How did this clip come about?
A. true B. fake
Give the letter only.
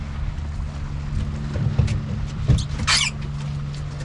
A